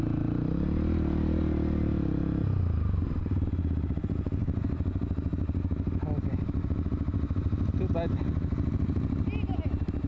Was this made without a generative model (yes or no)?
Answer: yes